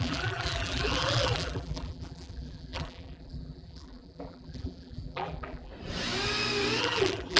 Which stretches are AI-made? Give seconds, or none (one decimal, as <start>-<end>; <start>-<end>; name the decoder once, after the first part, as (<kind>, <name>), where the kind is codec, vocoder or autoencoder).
0.0-5.7 (vocoder, BigVGAN v2); 6.8-7.4